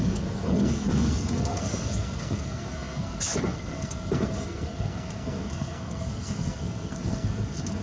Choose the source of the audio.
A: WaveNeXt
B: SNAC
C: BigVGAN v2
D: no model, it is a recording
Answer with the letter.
B